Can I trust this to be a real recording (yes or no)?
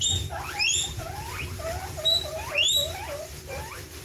no